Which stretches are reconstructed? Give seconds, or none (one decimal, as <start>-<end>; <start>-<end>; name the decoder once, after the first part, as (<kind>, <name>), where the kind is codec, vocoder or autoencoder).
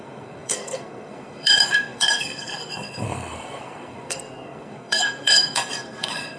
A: 0.0-6.4 (codec, SNAC)